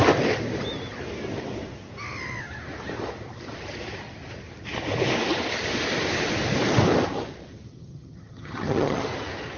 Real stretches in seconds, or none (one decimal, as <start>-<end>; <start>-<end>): 0.0-7.7; 9.0-9.6

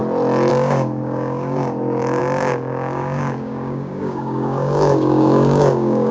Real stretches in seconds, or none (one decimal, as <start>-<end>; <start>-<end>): 0.0-0.5

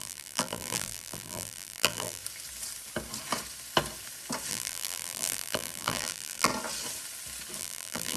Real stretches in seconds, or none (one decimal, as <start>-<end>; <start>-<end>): 2.2-4.5; 6.5-7.6

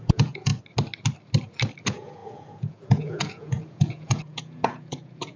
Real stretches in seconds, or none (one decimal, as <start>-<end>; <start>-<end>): 0.5-1.8